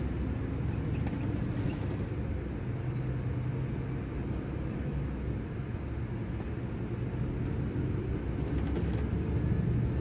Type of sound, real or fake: real